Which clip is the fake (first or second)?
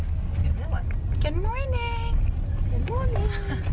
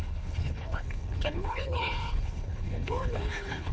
second